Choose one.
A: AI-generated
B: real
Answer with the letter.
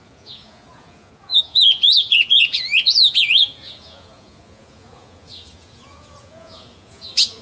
A